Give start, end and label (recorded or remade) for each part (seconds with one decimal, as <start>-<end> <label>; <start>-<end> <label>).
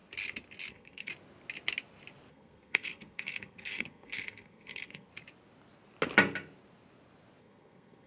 0.0-0.7 recorded; 0.7-1.1 remade; 1.1-2.3 recorded; 2.3-5.1 remade; 5.1-7.4 recorded; 7.4-8.1 remade